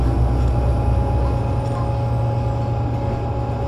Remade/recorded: recorded